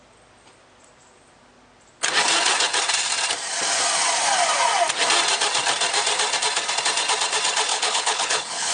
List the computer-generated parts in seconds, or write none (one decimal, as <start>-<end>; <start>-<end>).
7.7-8.7

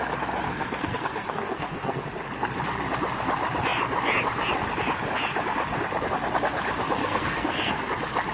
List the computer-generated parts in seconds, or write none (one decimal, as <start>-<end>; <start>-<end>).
0.5-2.0; 7.0-7.8

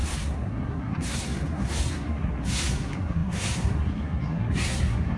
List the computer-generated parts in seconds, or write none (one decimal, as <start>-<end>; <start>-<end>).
0.0-5.2

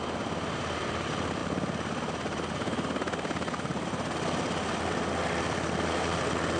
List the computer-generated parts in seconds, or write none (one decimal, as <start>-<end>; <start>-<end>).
none

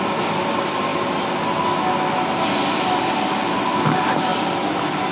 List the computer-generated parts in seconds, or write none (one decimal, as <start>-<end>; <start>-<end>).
0.0-0.9; 2.7-5.1

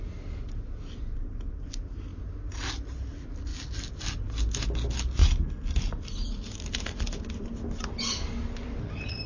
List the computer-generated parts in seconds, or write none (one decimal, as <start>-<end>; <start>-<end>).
none